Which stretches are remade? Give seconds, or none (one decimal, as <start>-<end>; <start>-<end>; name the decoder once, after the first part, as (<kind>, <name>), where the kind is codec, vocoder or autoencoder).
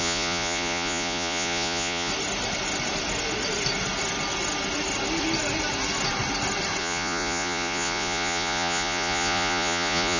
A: 0.0-2.1 (vocoder, Vocos); 6.8-10.2